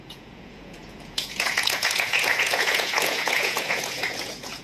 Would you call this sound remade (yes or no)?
yes